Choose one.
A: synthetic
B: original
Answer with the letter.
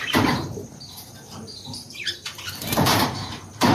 A